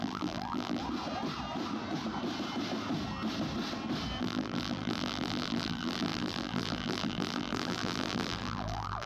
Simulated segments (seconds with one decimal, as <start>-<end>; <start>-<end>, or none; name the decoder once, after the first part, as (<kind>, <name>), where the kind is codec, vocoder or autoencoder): 0.0-0.8 (vocoder, BigVGAN v2); 4.2-9.1